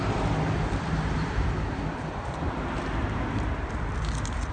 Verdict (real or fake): fake